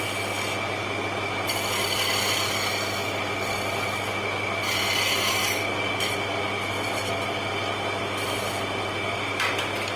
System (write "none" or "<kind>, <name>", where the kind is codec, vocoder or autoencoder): none